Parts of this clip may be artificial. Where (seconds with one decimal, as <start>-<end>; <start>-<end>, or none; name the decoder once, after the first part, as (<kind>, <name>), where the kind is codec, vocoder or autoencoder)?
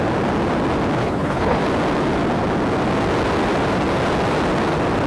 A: 1.0-1.6 (codec, HILCodec)